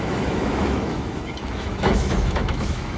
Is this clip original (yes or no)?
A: no